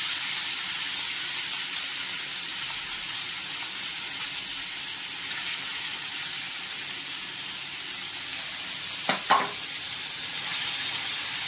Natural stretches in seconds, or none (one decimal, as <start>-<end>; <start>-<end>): 0.0-11.5